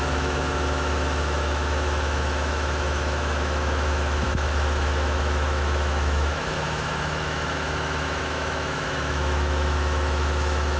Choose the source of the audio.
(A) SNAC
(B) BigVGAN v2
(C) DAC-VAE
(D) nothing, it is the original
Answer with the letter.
C